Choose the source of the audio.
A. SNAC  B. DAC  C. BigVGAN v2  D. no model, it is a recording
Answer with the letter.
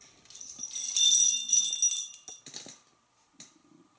D